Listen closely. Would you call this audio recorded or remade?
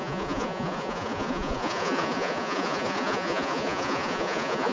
remade